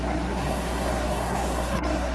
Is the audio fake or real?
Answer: fake